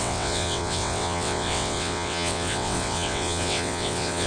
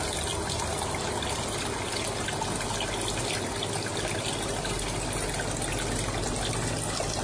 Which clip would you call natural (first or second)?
second